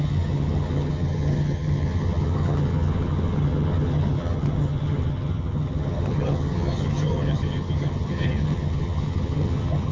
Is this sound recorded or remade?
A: remade